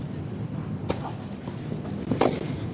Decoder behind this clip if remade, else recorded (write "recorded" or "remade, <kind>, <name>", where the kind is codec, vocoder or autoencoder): remade, vocoder, BigVGAN v2